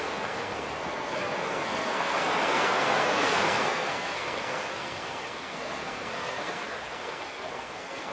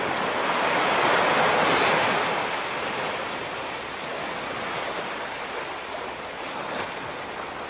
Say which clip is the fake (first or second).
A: first